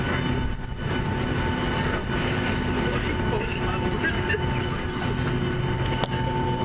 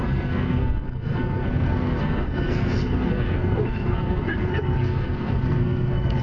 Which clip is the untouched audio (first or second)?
first